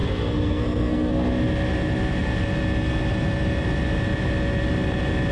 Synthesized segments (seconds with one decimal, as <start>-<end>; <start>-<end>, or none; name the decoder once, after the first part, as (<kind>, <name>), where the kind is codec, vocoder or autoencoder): 0.0-1.1 (codec, SNAC)